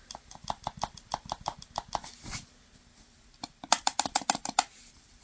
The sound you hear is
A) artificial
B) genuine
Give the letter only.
B